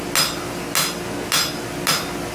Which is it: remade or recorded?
recorded